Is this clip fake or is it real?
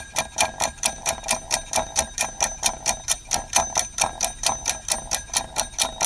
fake